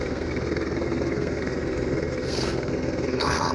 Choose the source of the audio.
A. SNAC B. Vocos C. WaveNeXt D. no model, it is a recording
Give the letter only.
A